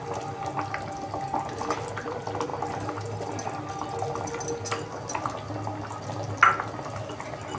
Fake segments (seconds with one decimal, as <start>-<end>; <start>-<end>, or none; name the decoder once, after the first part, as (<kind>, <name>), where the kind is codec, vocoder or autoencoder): none